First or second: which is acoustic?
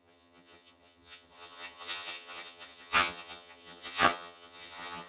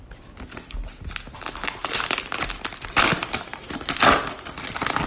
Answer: second